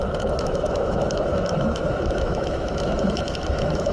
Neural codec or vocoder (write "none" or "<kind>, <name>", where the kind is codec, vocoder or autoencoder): autoencoder, DAC-VAE